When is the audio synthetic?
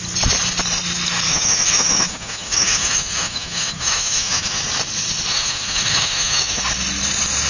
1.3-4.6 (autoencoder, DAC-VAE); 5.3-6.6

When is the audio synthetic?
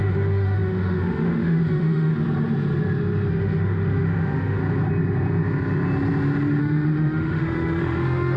0.0-2.1 (autoencoder, DAC-VAE); 3.3-4.6; 6.6-8.4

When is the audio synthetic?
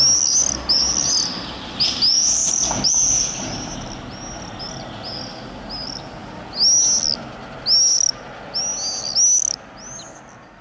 none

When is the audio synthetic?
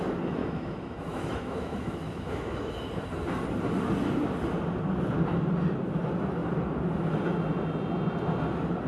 0.4-2.7 (autoencoder, DAC-VAE)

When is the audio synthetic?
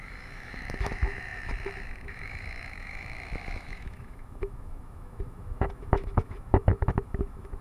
0.0-7.6 (autoencoder, DAC-VAE)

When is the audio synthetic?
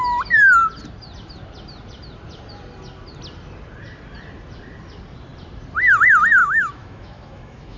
6.4-7.8 (autoencoder, DAC-VAE)